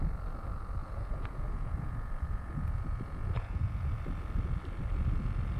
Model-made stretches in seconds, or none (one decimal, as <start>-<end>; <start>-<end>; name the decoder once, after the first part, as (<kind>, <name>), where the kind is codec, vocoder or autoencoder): 0.8-3.9 (vocoder, Vocos)